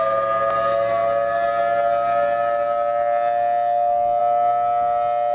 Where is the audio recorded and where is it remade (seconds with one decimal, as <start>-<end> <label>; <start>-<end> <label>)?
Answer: 0.0-5.3 recorded